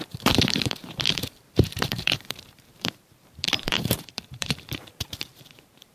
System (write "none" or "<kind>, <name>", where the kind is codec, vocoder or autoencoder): vocoder, BigVGAN v2